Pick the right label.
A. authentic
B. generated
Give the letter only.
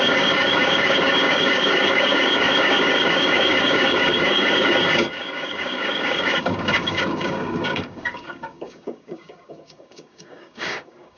B